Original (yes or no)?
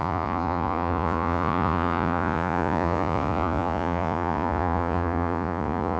no